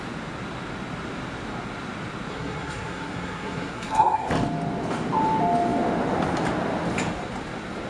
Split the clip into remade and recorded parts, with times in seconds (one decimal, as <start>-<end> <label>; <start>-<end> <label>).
0.0-2.3 recorded; 2.3-4.3 remade; 4.3-7.9 recorded